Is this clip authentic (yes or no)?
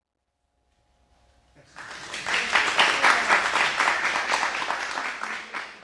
yes